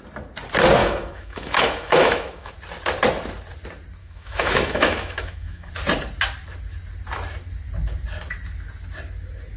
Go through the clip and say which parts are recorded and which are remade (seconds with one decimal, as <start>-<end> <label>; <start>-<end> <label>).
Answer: 0.0-0.8 recorded; 0.8-2.5 remade; 2.5-4.0 recorded; 4.0-5.7 remade; 5.7-9.6 recorded